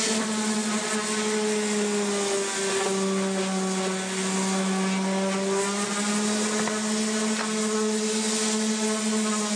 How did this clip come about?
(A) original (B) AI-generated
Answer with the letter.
A